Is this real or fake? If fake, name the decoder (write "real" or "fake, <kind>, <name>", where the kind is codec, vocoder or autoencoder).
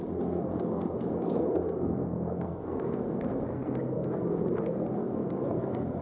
fake, codec, SNAC